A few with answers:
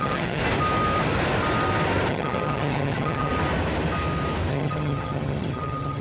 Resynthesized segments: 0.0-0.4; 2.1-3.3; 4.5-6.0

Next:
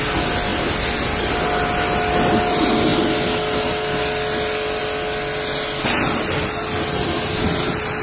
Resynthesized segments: none